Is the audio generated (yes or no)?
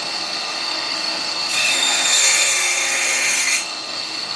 yes